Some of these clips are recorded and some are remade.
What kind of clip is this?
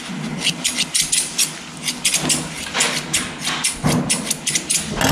recorded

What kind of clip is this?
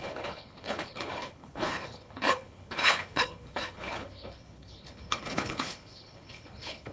remade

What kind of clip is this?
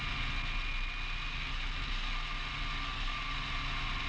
recorded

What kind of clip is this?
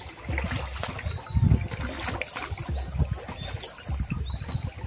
recorded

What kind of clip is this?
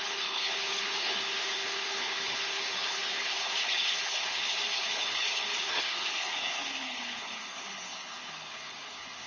remade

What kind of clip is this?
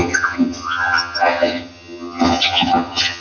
remade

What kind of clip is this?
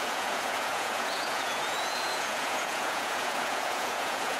remade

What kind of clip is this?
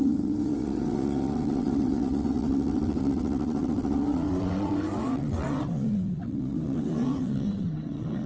remade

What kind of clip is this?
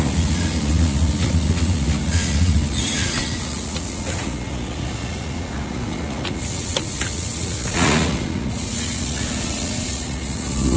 remade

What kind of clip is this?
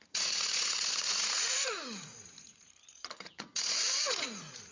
remade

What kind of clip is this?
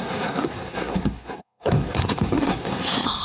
remade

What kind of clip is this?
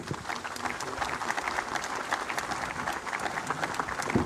recorded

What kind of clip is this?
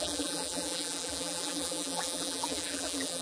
remade